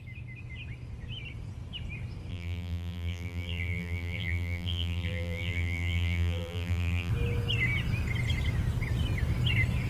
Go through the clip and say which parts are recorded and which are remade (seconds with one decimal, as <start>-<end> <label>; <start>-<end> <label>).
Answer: 0.0-2.3 recorded; 2.3-7.1 remade; 7.1-9.9 recorded